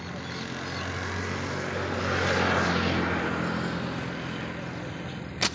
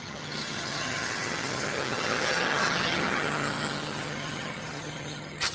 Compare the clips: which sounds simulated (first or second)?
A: second